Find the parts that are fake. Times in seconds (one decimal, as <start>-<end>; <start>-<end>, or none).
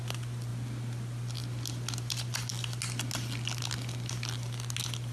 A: none